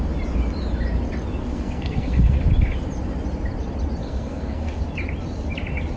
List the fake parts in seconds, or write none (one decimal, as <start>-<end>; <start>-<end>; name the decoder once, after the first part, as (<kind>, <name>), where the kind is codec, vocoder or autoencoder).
1.4-2.4 (codec, SNAC); 4.0-4.8